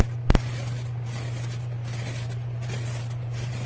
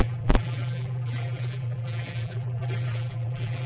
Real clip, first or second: first